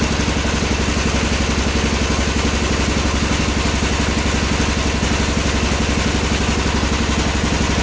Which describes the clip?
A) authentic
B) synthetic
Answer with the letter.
A